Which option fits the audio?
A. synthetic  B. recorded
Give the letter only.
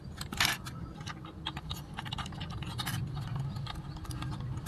B